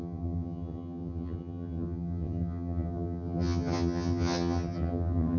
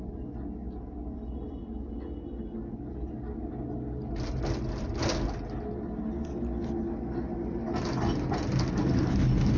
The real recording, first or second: second